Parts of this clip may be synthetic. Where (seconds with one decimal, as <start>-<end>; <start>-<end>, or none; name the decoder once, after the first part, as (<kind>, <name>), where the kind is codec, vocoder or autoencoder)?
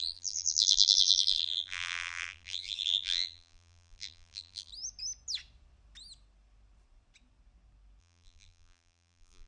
0.0-4.7 (vocoder, BigVGAN v2); 8.0-9.5